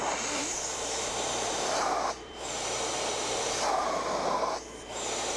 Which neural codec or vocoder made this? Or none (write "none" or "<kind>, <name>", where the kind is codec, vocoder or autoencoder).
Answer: vocoder, BigVGAN v2